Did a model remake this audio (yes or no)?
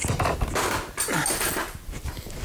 no